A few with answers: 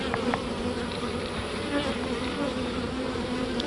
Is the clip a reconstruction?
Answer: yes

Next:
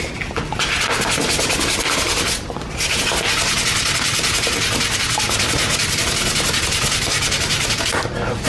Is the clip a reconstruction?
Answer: no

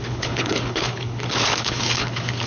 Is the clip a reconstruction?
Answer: yes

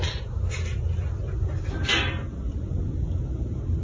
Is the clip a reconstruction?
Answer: no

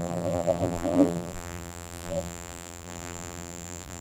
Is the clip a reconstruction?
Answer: yes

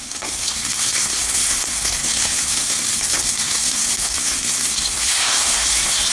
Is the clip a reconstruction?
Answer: yes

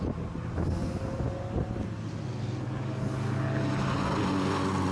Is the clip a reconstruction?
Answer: no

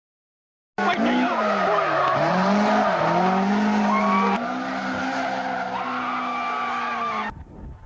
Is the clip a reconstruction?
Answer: no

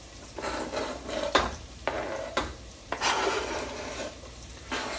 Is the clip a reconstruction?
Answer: yes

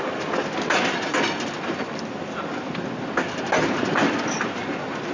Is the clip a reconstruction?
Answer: no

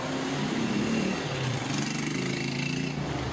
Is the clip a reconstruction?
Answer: no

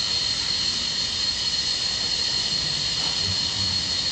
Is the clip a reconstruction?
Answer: no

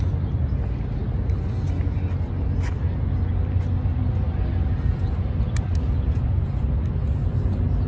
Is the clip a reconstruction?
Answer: no